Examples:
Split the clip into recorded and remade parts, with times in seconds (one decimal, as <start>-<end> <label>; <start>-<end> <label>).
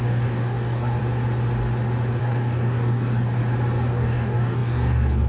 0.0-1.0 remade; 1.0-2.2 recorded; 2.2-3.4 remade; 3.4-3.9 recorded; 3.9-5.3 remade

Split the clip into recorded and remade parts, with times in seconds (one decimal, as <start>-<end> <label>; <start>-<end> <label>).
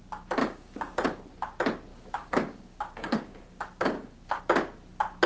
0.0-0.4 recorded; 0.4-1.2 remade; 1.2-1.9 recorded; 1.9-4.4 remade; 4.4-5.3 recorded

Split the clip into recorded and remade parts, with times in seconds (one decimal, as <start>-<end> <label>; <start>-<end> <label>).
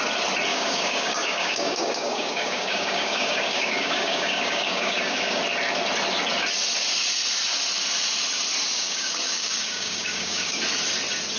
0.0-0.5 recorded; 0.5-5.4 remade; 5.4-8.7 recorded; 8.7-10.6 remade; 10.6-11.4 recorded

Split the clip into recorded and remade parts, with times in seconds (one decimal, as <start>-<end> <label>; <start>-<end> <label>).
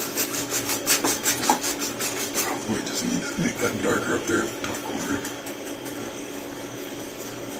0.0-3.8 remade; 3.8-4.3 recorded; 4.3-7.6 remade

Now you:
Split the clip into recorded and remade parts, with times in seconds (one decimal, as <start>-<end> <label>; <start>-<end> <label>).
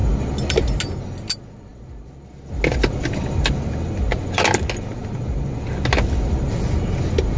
0.0-7.4 recorded